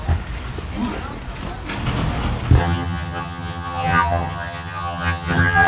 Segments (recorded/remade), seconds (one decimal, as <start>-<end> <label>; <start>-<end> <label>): 0.0-2.6 recorded; 2.6-5.7 remade